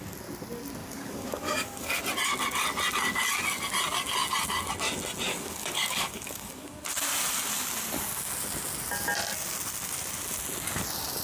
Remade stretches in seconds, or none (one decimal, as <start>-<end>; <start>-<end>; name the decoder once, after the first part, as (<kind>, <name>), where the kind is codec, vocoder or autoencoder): 0.8-2.0 (codec, DAC); 5.3-6.8